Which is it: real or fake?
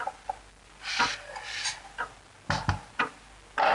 real